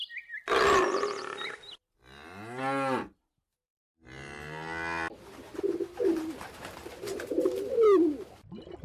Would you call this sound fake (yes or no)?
no